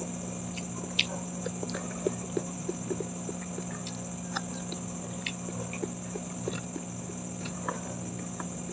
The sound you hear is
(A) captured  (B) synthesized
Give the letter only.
A